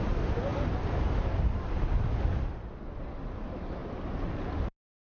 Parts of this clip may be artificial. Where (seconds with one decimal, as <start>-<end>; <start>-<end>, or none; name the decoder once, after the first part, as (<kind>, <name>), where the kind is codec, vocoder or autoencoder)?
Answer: 3.8-5.0 (vocoder, BigVGAN v2)